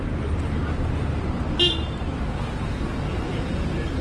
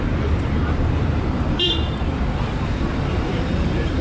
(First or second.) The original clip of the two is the first